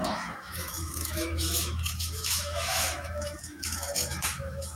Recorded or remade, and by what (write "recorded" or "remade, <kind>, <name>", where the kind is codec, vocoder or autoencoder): remade, autoencoder, DAC-VAE